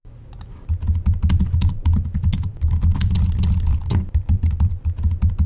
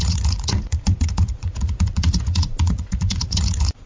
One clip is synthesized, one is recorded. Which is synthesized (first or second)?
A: second